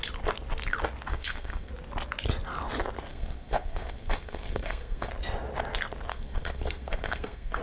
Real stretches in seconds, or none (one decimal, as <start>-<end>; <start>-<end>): 0.0-1.1; 1.7-3.1; 5.1-6.1